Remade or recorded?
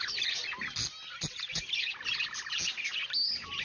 recorded